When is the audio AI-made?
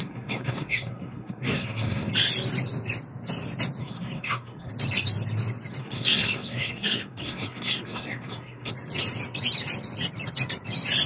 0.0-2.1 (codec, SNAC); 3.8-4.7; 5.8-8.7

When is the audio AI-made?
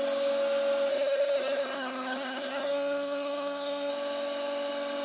0.9-3.9 (codec, SNAC)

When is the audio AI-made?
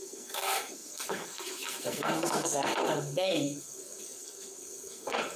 0.0-5.4 (codec, SNAC)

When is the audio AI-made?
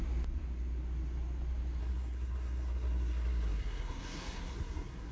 1.8-5.1 (codec, SNAC)